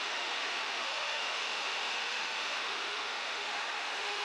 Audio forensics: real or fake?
fake